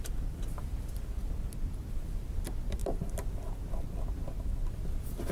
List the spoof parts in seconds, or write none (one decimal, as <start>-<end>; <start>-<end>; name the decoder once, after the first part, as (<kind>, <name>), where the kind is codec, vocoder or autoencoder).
none